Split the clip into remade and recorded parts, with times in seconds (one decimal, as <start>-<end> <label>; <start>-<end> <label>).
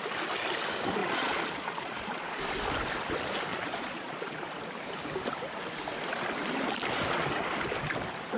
0.0-1.0 recorded; 1.0-2.4 remade; 2.4-3.5 recorded; 3.5-4.3 remade; 4.3-8.4 recorded